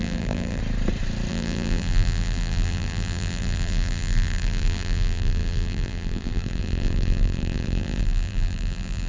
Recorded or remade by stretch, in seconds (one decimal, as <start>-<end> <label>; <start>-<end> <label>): 0.0-0.6 remade; 0.6-1.3 recorded; 1.3-9.1 remade